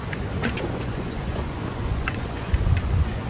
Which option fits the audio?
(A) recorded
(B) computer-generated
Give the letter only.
B